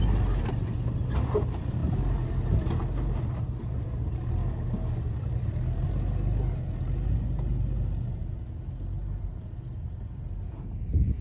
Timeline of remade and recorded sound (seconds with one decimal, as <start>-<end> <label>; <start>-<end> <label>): 0.0-11.2 recorded